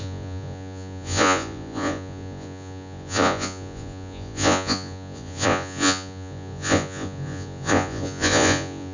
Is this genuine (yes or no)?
no